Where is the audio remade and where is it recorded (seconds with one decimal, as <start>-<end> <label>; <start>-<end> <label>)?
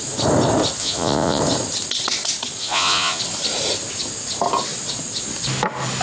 0.0-0.8 recorded; 0.8-1.4 remade; 1.4-2.6 recorded; 2.6-3.2 remade; 3.2-6.0 recorded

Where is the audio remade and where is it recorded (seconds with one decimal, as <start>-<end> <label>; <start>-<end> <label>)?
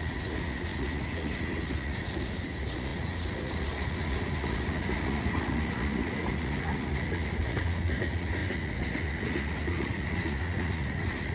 0.0-11.3 remade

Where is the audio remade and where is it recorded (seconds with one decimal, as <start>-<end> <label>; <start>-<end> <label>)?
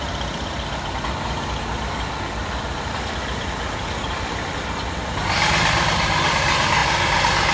0.0-7.5 recorded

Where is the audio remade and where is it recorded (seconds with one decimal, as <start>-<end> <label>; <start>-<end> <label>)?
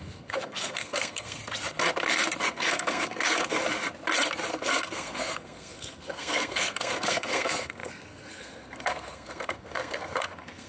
0.0-1.4 remade; 1.4-2.5 recorded; 2.5-3.6 remade; 3.6-4.5 recorded; 4.5-10.7 remade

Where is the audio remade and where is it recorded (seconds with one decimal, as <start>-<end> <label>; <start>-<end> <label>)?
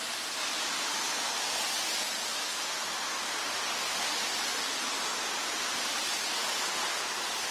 0.0-7.5 recorded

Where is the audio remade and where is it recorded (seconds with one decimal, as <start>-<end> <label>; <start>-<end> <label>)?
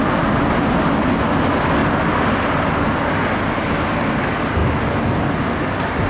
0.0-6.1 recorded